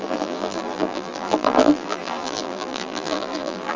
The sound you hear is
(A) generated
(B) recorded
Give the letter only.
A